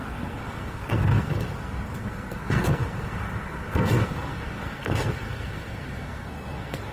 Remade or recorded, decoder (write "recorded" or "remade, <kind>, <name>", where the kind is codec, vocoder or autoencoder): remade, codec, SNAC